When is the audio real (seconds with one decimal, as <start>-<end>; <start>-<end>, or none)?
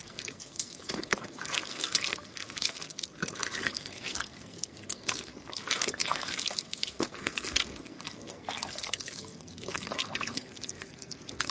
none